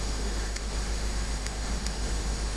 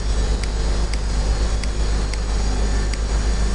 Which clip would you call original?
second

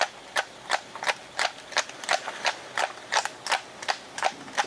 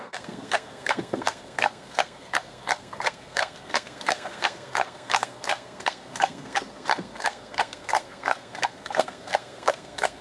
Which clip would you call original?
first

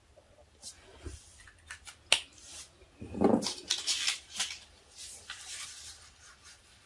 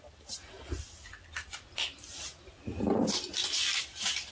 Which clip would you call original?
first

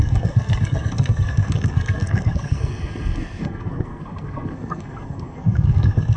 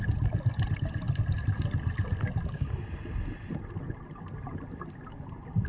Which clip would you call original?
second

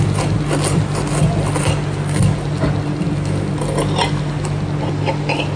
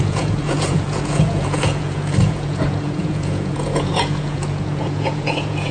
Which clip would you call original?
first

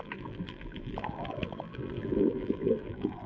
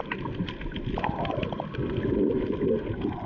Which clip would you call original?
second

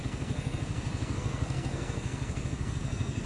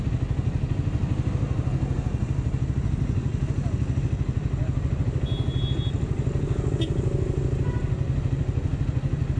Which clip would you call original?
second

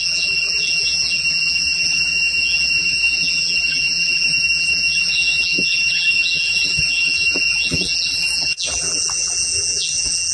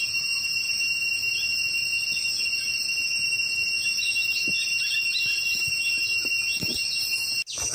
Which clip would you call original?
second